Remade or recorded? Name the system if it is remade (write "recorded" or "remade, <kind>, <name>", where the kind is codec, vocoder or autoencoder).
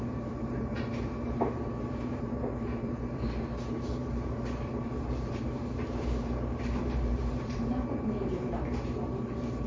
remade, vocoder, BigVGAN v2